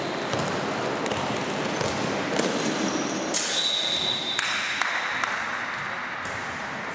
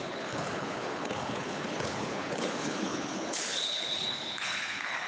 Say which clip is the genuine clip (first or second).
first